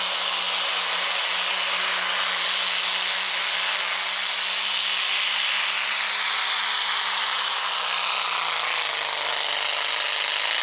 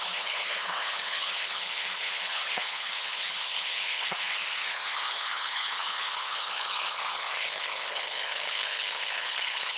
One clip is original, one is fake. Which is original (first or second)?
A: first